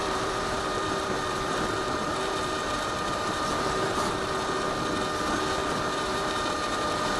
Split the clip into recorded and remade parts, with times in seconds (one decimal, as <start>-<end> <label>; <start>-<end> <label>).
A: 0.0-4.3 remade; 4.3-5.6 recorded; 5.6-7.2 remade